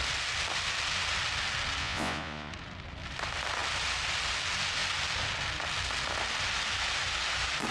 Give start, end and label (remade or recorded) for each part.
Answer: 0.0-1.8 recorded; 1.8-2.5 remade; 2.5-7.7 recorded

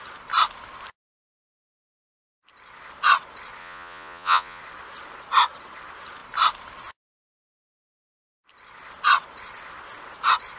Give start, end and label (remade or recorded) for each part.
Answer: 0.0-3.6 recorded; 3.6-4.6 remade; 4.6-10.6 recorded

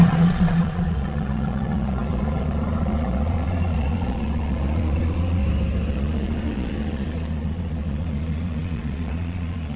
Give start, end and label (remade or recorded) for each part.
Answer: 0.0-5.4 remade; 5.4-5.9 recorded; 5.9-9.8 remade